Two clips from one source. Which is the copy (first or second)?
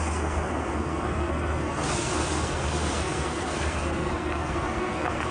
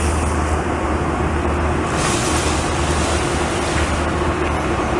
first